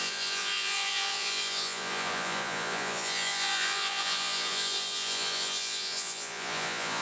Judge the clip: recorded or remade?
remade